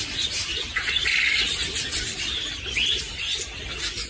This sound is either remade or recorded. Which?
recorded